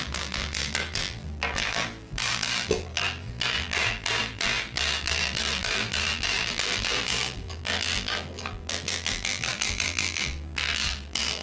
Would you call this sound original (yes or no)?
no